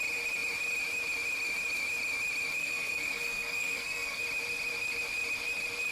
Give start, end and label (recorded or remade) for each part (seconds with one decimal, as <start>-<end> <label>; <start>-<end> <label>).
0.0-2.6 recorded; 2.6-4.2 remade; 4.2-5.9 recorded